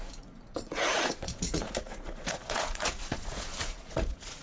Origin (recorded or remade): remade